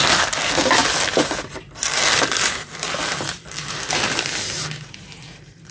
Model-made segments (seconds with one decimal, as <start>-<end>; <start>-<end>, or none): none